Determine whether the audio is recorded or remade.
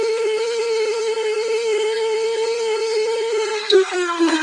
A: remade